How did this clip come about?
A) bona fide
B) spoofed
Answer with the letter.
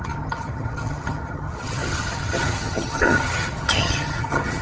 B